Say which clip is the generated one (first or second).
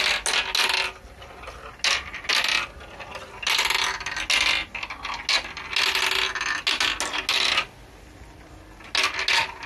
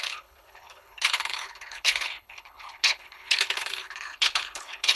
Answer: second